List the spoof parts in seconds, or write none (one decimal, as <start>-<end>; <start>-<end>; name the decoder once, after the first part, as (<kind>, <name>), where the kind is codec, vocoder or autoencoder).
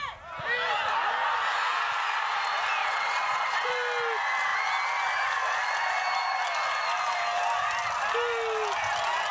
2.8-3.7 (vocoder, WaveNeXt)